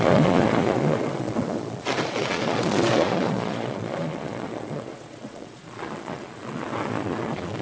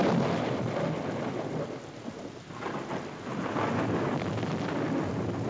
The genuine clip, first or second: second